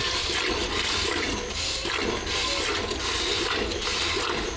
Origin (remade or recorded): recorded